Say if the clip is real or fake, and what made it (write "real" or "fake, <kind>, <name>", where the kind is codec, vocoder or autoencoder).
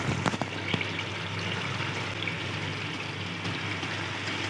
real